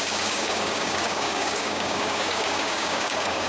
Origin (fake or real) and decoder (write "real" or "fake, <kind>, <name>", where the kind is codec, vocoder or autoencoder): fake, codec, DAC